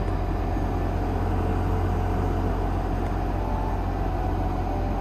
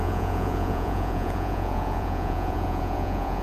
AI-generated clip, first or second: second